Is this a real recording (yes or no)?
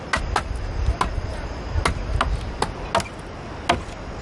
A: yes